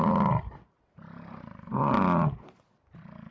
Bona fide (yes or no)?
yes